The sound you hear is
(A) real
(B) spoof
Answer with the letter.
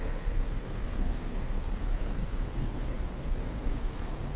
B